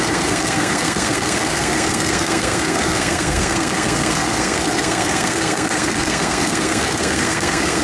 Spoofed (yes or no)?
yes